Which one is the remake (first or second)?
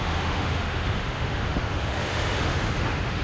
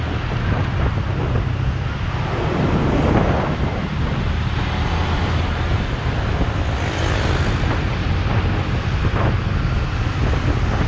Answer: first